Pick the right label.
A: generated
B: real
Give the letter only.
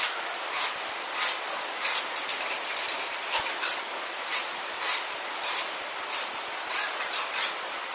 B